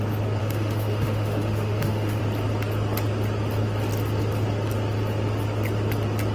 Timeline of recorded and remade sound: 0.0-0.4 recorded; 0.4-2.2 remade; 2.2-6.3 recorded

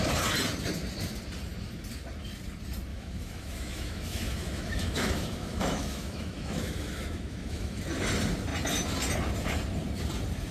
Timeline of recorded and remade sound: 0.0-2.9 recorded; 2.9-7.8 remade; 7.8-10.5 recorded

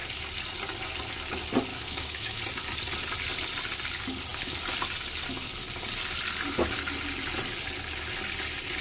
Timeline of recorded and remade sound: 0.0-1.7 recorded; 1.7-2.4 remade; 2.4-8.8 recorded

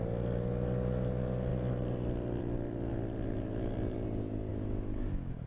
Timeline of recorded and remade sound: 0.0-4.5 recorded; 4.5-5.5 remade

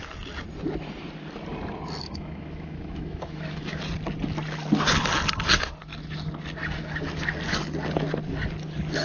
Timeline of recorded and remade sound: 0.0-2.0 recorded; 2.0-3.8 remade; 3.8-9.0 recorded